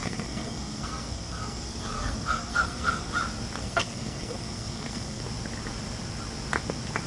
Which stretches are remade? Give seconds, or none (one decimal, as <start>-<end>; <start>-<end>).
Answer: 0.0-3.1; 3.6-5.2